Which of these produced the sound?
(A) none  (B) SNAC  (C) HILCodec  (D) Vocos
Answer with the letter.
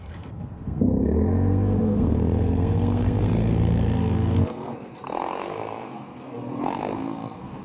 B